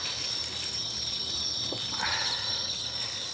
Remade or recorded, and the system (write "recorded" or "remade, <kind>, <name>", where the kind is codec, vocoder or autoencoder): recorded